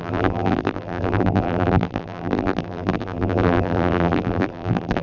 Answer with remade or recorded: remade